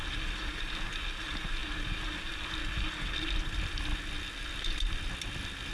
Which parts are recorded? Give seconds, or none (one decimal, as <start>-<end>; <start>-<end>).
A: 0.0-5.7